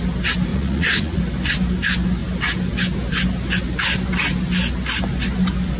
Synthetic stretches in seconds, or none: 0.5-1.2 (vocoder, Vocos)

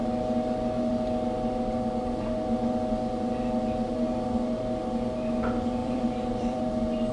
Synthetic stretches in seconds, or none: 5.8-6.6 (vocoder, BigVGAN v2)

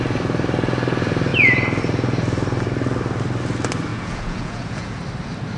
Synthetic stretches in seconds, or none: 3.9-5.0 (vocoder, Vocos)

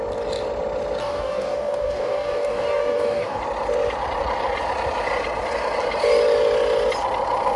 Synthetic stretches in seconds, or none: 1.0-3.4 (codec, DAC)

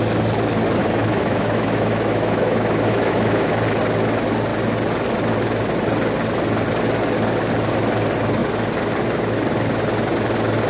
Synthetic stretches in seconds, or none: 0.8-3.5 (autoencoder, DAC-VAE)

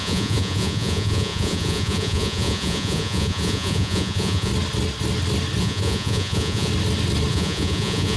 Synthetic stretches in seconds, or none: 0.0-4.5 (vocoder, Vocos); 5.6-6.7; 7.3-8.2